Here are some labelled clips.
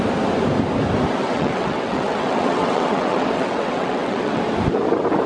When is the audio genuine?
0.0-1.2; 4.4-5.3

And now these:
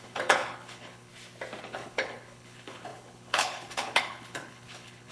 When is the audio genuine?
1.1-1.6

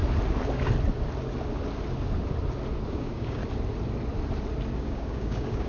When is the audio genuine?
0.0-2.9; 3.4-4.8

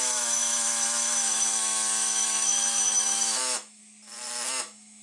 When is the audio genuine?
3.8-4.5

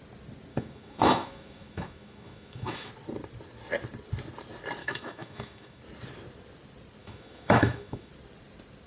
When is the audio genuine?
0.0-0.5; 2.9-4.8; 5.8-7.0; 8.1-8.9